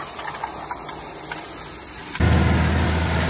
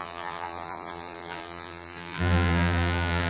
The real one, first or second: first